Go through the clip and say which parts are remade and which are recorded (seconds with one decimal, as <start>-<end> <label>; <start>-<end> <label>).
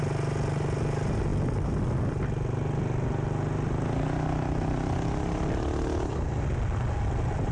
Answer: 0.0-7.5 recorded